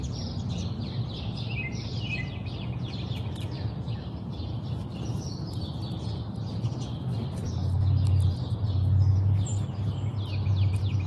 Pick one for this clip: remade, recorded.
recorded